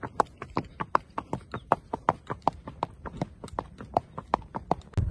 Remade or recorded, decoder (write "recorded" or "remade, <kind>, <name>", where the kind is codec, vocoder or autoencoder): recorded